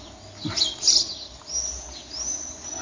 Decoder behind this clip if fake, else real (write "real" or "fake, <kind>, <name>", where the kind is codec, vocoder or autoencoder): real